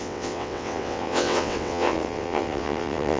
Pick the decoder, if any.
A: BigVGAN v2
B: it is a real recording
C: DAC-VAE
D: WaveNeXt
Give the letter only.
D